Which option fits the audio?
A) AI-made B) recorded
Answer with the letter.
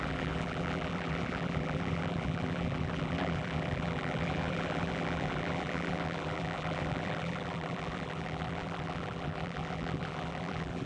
A